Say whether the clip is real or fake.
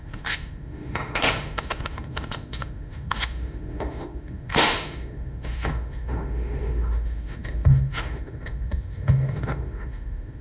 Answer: fake